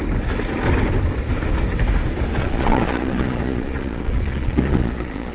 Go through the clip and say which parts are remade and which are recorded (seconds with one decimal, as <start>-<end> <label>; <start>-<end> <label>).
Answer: 0.0-2.4 recorded; 2.4-5.3 remade